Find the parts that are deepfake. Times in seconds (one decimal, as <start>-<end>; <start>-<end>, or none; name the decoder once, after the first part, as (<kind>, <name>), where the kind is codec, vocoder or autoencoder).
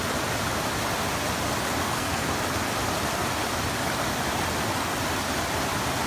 1.8-2.3 (codec, SNAC)